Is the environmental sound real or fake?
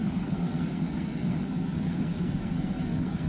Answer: fake